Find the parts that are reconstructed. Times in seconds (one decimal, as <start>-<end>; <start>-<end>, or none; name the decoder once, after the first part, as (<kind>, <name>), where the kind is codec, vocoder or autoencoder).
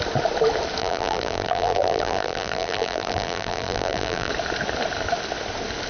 0.8-4.3 (vocoder, BigVGAN v2)